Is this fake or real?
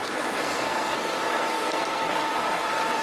fake